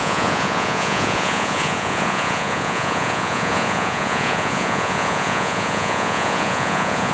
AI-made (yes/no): yes